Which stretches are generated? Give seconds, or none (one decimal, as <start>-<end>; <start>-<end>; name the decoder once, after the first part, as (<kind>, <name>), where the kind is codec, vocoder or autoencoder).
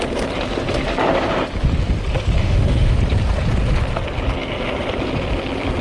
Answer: 2.4-3.0 (autoencoder, DAC-VAE)